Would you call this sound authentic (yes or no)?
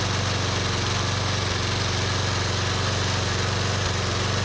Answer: yes